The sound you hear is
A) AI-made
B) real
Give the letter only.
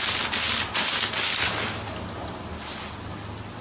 B